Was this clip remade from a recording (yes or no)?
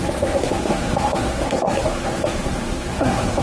yes